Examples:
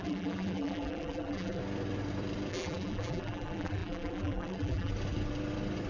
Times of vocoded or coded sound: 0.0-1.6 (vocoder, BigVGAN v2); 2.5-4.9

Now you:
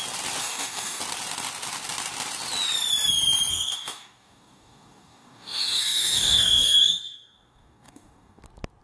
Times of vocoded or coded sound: 0.4-1.0 (codec, DAC); 3.5-8.4

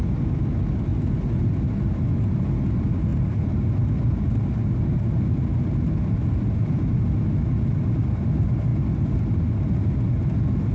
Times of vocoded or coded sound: none

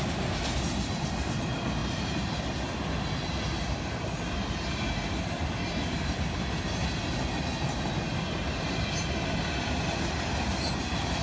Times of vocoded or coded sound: none

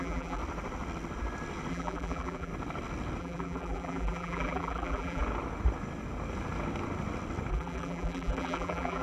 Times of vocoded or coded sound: 0.0-0.4 (vocoder, BigVGAN v2); 1.7-2.5; 3.2-5.2; 7.5-9.0

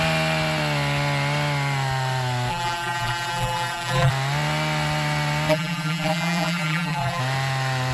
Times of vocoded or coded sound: 2.5-4.1 (vocoder, BigVGAN v2); 5.5-7.2

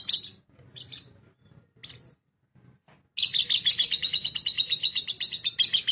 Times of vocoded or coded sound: none